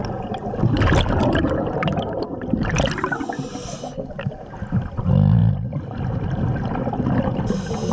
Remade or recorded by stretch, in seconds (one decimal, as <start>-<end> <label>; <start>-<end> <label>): 0.0-7.9 recorded